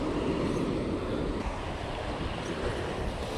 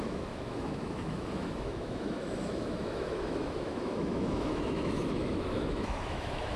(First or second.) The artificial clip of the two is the second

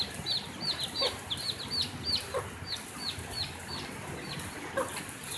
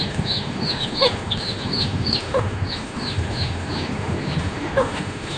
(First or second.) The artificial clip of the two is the second